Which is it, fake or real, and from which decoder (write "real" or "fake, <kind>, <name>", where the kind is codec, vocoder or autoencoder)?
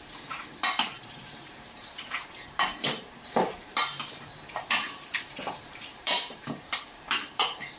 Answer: fake, vocoder, BigVGAN v2